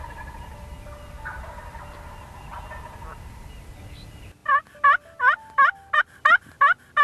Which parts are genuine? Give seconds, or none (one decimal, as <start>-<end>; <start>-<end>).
0.0-7.0